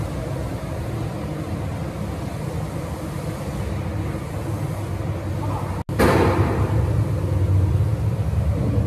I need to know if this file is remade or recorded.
recorded